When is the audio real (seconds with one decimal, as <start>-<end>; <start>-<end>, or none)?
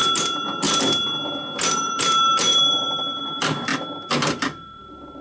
0.0-1.7